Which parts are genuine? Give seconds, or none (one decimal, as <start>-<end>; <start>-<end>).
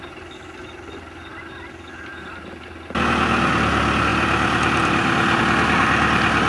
0.0-6.5